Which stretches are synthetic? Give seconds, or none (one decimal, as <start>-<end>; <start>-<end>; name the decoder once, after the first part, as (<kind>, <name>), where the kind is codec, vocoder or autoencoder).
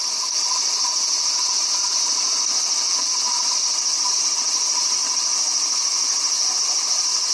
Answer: none